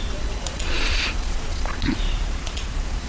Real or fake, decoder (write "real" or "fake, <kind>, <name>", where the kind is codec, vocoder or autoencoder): fake, vocoder, Vocos